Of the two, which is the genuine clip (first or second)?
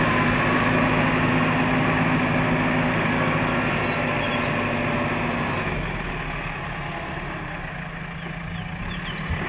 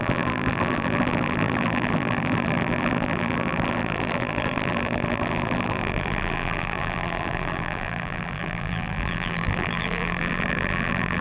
first